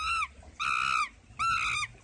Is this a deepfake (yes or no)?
no